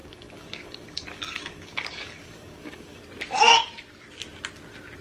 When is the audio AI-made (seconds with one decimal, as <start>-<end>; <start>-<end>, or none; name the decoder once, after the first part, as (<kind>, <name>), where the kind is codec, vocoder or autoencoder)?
0.0-3.0 (codec, DAC)

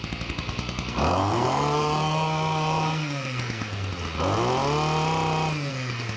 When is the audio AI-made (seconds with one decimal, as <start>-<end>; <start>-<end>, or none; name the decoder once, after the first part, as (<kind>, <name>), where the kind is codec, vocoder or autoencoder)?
0.0-3.9 (codec, SNAC); 5.7-6.2

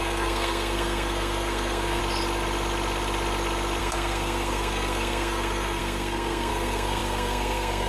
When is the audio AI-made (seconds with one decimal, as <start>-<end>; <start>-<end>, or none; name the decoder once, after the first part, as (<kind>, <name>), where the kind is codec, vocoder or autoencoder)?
0.0-2.0 (codec, SNAC); 3.8-7.9

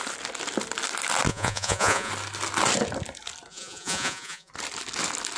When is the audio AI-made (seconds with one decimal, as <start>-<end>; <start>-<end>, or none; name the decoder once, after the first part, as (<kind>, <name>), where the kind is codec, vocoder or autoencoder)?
1.3-2.1 (vocoder, Vocos); 3.5-4.5

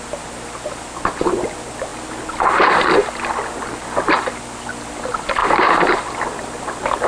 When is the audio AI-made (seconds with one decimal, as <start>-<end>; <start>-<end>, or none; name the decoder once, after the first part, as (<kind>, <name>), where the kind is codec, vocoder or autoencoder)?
5.4-6.0 (vocoder, BigVGAN v2)